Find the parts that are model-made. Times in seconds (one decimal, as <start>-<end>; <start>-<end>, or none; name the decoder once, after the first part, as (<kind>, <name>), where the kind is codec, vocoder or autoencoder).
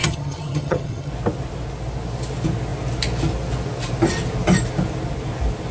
0.0-1.1 (vocoder, HiFi-GAN)